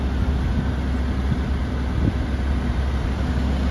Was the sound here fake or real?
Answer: real